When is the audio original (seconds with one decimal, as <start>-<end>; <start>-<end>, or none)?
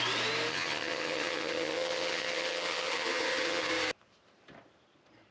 0.0-0.5; 3.7-5.3